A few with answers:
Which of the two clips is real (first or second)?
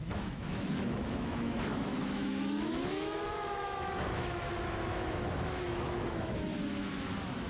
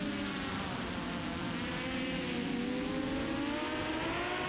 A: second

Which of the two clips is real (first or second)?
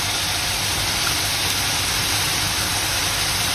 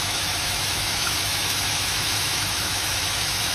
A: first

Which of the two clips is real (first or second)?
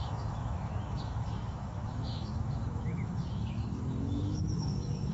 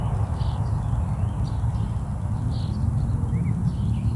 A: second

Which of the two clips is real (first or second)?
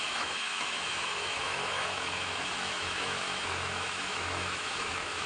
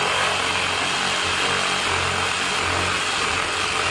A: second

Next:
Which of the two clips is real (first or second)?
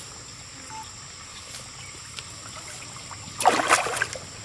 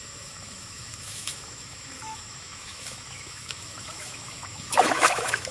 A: first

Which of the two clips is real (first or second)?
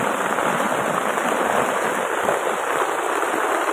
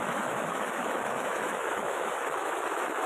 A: first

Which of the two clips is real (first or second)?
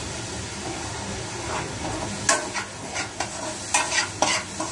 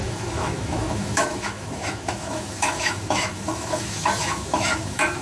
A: first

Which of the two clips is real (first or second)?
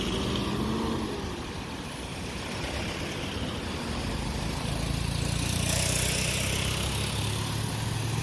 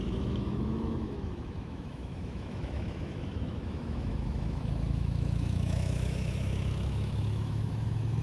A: first